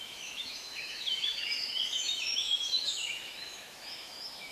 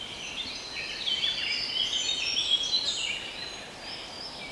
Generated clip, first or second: first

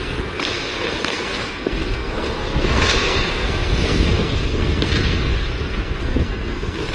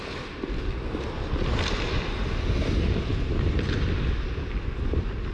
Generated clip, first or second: first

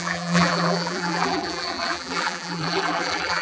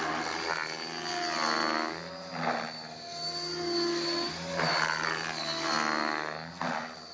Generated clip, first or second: first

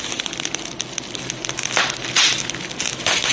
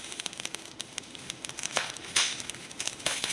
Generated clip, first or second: second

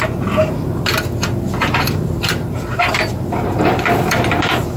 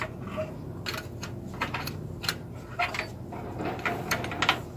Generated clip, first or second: first